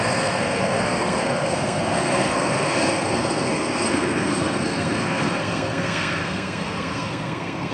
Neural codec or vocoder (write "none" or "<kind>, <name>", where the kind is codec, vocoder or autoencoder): codec, SNAC